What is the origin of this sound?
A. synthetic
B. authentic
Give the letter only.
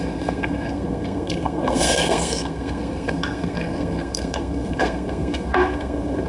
A